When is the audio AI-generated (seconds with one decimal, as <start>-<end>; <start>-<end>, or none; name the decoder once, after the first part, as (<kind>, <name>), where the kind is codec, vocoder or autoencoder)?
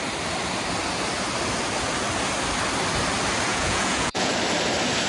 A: 3.5-4.3 (vocoder, Vocos)